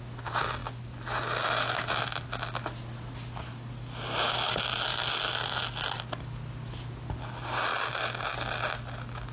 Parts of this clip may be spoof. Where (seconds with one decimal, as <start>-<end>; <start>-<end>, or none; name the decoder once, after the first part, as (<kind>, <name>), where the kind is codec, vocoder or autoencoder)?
none